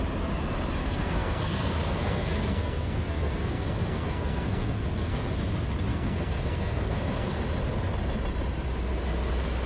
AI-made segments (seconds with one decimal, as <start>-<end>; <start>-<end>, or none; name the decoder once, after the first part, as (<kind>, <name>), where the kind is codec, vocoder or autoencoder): 0.8-5.3 (codec, SNAC); 5.9-7.4